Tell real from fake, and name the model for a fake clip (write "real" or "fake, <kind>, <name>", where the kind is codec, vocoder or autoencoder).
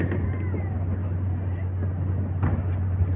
real